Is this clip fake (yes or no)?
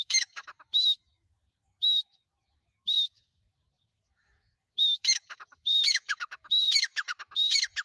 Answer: yes